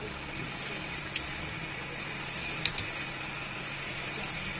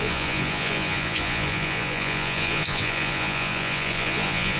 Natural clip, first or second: first